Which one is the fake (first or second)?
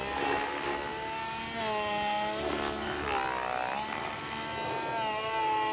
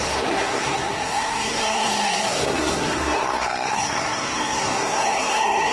second